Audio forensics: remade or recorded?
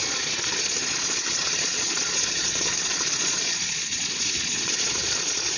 remade